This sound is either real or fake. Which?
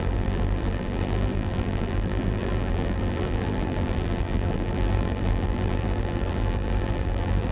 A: fake